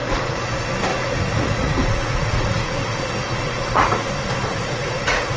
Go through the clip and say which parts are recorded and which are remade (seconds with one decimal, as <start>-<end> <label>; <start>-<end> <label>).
0.0-0.5 remade; 0.5-0.9 recorded; 0.9-4.1 remade; 4.1-4.5 recorded; 4.5-5.4 remade